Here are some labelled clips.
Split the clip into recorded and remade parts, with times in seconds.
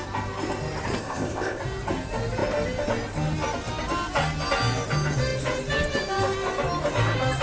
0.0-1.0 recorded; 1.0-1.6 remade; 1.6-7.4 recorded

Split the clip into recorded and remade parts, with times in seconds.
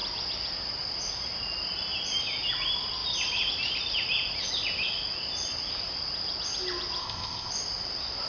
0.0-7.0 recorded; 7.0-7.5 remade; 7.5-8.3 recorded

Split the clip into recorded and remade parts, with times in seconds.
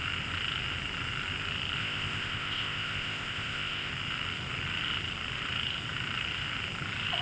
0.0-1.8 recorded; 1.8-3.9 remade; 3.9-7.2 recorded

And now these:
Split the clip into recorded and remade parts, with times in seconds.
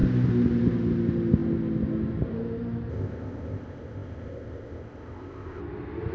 0.0-2.9 recorded; 2.9-5.6 remade; 5.6-6.1 recorded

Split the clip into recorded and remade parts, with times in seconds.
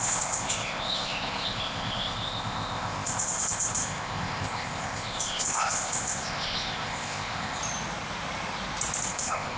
0.0-7.6 remade; 7.6-9.1 recorded; 9.1-9.6 remade